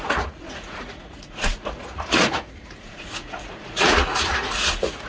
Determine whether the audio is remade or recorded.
remade